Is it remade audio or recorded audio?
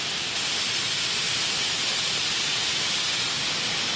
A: remade